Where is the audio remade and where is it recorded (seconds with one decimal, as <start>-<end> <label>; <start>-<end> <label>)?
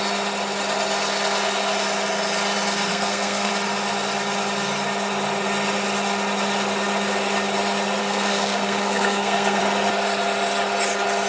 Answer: 0.0-2.9 recorded; 2.9-3.5 remade; 3.5-8.0 recorded; 8.0-9.6 remade; 9.6-11.3 recorded